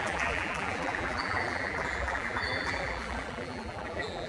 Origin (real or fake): fake